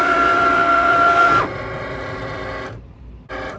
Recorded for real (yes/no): no